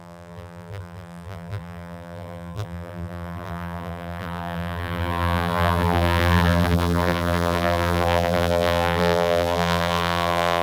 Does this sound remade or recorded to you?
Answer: remade